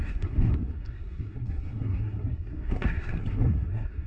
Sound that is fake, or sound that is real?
fake